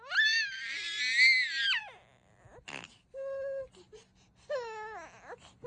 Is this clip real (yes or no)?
yes